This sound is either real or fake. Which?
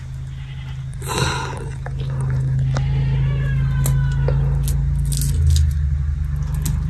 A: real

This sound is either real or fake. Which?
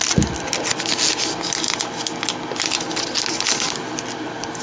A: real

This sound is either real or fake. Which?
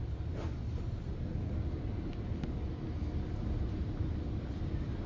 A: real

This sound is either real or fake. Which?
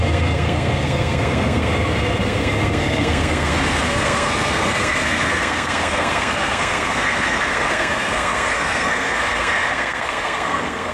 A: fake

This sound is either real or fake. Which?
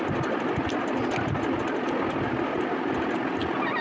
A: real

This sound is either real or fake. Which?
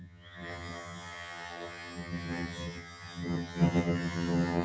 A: fake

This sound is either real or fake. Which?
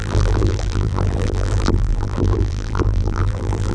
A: fake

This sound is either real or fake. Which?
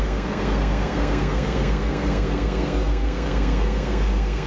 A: fake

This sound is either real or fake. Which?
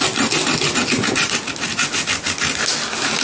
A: real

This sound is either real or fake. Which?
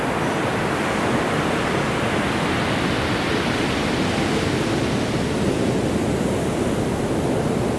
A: real